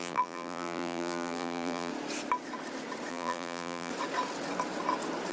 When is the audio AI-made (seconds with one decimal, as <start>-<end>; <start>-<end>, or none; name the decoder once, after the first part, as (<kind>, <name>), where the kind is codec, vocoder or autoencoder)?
0.0-1.9 (vocoder, BigVGAN v2); 3.1-3.9